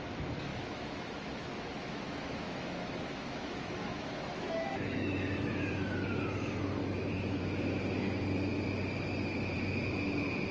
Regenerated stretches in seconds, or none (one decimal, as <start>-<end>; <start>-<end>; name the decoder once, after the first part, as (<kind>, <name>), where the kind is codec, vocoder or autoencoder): 0.5-5.6 (autoencoder, DAC-VAE); 6.8-7.4